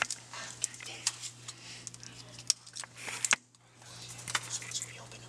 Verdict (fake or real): real